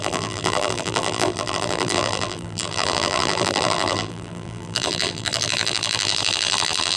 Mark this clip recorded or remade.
remade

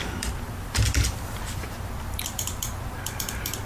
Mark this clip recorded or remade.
remade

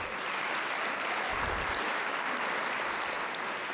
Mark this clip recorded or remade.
recorded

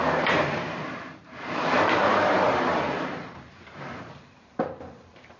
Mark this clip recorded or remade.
remade